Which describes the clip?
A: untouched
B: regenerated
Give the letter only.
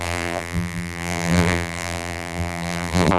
B